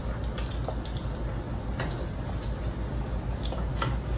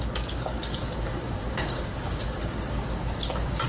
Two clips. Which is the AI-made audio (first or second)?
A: second